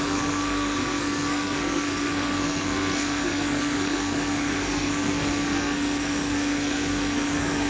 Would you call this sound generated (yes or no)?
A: yes